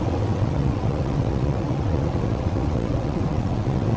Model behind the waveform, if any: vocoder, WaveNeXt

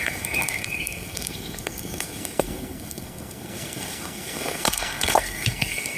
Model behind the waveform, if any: codec, SNAC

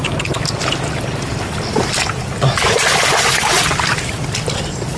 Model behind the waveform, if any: none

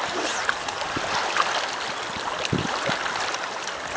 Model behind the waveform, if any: none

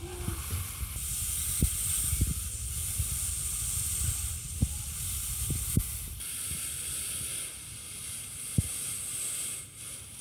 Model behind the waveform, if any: none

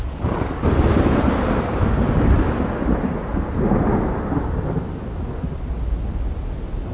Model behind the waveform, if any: none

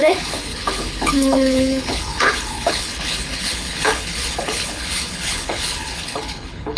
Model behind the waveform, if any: codec, HILCodec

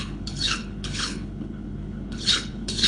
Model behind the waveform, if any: codec, HILCodec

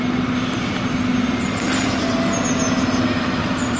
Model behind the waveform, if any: none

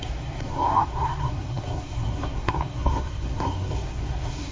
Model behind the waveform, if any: codec, SNAC